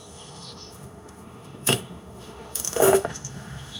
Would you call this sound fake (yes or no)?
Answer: yes